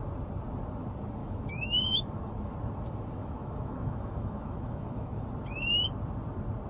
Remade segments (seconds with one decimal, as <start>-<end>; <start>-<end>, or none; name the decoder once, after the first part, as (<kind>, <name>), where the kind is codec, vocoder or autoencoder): 1.2-2.3 (autoencoder, DAC-VAE); 3.2-5.3